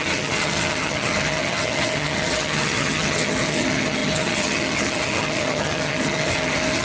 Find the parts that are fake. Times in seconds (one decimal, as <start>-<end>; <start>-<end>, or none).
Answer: 0.0-6.8